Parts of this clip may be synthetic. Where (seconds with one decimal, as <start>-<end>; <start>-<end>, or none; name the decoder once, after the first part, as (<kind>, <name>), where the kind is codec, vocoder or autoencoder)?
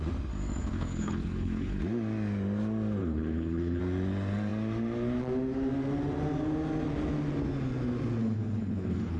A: 0.6-1.8 (codec, HILCodec); 3.0-3.8; 8.2-9.2